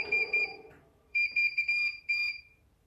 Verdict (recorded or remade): remade